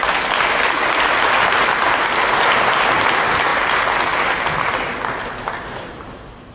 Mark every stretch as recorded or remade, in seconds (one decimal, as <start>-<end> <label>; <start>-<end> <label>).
0.0-6.5 recorded